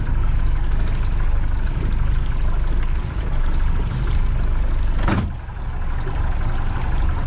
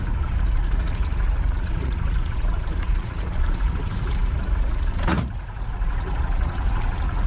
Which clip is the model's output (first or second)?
second